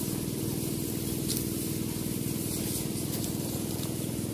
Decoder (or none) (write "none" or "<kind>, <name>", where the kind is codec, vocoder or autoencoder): none